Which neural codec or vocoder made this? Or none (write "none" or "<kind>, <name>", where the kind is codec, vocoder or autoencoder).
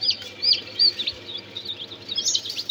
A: none